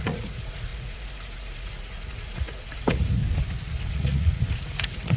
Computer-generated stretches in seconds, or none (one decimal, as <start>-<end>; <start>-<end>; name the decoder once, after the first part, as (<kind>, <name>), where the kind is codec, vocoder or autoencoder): 0.0-3.2 (vocoder, Vocos); 3.9-5.2